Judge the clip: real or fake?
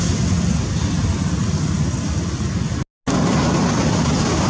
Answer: real